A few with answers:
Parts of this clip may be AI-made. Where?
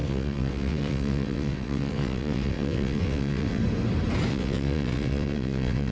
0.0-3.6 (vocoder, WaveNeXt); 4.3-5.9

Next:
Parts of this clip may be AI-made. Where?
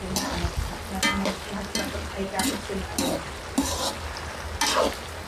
none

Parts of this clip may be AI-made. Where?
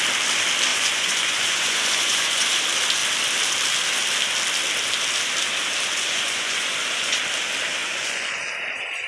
0.7-2.5 (vocoder, Vocos); 5.9-7.2; 7.8-8.4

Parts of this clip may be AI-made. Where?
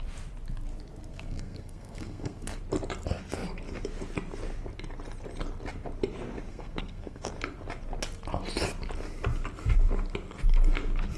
1.1-2.6 (codec, SNAC); 6.5-7.3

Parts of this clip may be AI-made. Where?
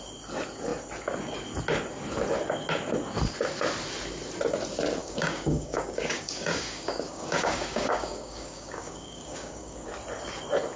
5.0-9.9 (codec, DAC)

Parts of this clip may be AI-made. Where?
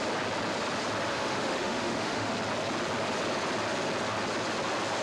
1.1-2.3 (autoencoder, DAC-VAE)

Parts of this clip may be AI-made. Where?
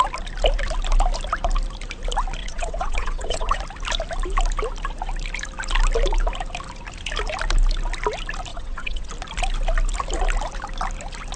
2.4-3.6 (vocoder, WaveNeXt); 8.5-9.1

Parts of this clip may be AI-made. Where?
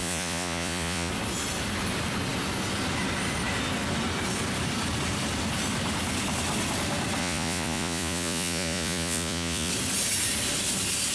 0.0-1.1 (vocoder, Vocos); 7.2-9.7